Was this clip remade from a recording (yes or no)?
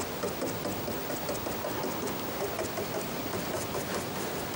no